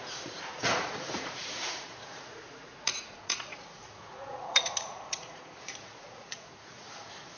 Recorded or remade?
remade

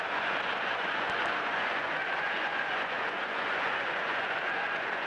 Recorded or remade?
remade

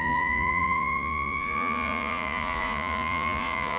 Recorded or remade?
remade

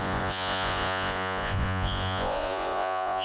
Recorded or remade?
remade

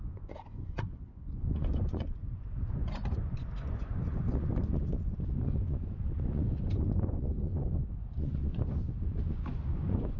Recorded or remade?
remade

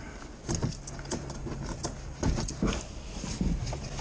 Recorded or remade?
recorded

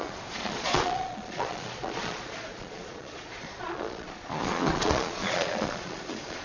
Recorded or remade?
remade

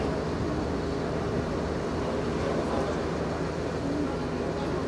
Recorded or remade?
recorded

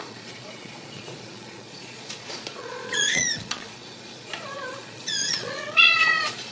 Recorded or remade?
remade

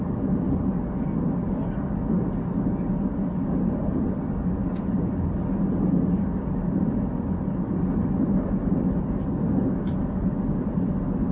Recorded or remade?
recorded